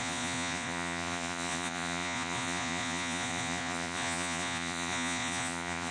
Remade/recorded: remade